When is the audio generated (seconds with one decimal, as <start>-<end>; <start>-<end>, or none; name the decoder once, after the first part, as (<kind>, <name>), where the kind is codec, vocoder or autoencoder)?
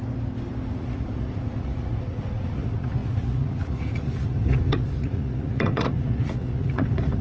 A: 0.7-7.2 (vocoder, Vocos)